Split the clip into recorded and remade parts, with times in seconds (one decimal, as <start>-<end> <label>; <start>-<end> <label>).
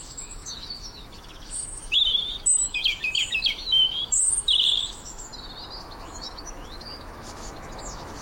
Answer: 0.0-5.3 remade; 5.3-5.8 recorded; 5.8-8.2 remade